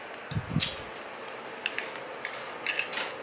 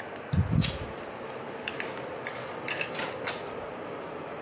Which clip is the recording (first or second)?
first